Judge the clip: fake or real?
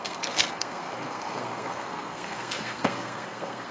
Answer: fake